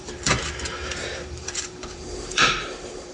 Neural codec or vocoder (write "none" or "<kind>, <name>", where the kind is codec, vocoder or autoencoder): vocoder, BigVGAN v2